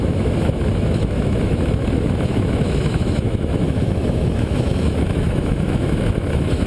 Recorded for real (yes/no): no